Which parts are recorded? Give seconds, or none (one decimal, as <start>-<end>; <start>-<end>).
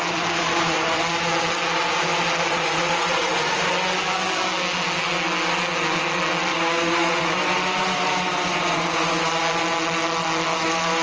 0.0-3.0; 3.7-6.5; 9.3-11.0